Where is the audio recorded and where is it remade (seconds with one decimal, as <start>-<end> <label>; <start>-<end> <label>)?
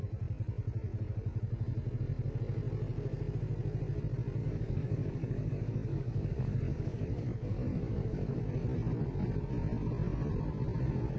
0.0-4.4 recorded; 4.4-8.4 remade; 8.4-11.2 recorded